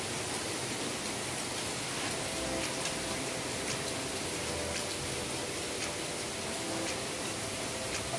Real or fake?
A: real